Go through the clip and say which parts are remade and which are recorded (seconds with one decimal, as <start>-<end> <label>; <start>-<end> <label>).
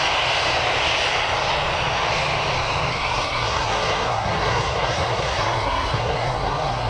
0.0-2.9 recorded; 2.9-6.9 remade